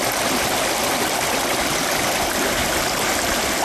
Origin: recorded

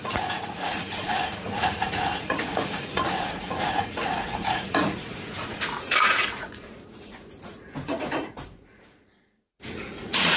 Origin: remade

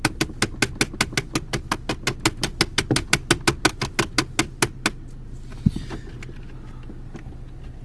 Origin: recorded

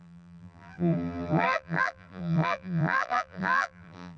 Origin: remade